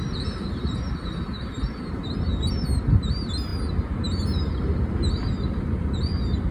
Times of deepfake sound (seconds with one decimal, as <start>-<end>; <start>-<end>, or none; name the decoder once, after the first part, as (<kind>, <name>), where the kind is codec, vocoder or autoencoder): none